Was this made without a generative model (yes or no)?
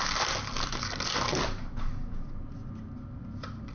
yes